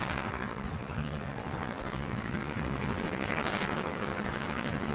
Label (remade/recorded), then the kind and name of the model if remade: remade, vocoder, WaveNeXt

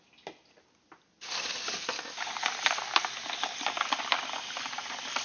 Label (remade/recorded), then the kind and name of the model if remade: recorded